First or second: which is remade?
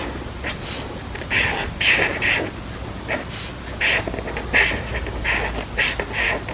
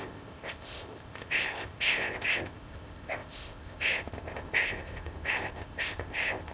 second